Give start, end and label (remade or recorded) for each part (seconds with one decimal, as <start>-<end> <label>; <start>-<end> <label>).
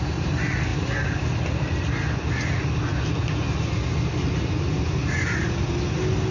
0.0-6.3 recorded